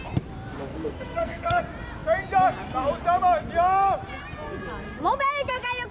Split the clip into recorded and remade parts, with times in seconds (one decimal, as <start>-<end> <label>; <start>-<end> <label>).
0.0-0.7 recorded; 0.7-1.6 remade; 1.6-5.9 recorded